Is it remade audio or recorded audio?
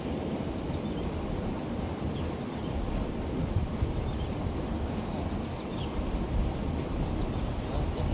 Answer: recorded